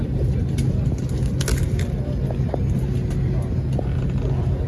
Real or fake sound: real